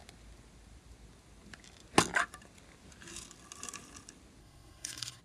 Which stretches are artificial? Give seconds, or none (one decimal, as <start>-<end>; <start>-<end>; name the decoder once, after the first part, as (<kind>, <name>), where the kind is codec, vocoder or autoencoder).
4.4-5.2 (codec, SNAC)